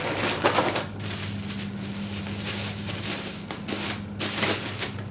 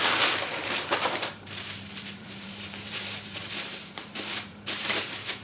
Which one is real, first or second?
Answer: first